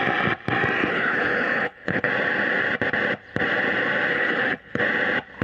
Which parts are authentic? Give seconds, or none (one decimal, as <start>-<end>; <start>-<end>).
0.0-0.8; 2.1-4.1; 4.8-5.4